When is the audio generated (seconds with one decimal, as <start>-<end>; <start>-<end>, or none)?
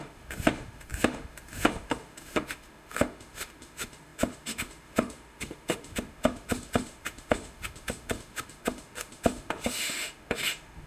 0.0-10.9